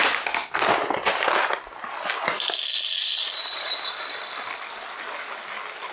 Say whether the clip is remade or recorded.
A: recorded